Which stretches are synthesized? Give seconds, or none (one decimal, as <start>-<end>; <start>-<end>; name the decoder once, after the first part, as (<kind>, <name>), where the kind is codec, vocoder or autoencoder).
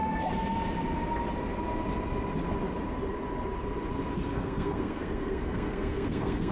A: 4.3-6.5 (codec, SNAC)